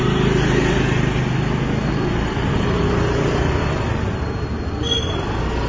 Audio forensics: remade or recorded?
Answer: recorded